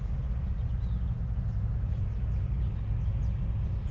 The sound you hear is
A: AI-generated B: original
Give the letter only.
B